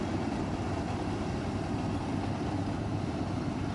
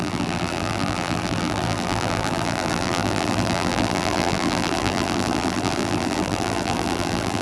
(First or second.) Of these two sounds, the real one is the first